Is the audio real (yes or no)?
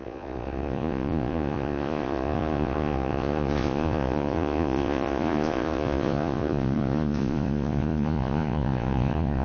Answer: no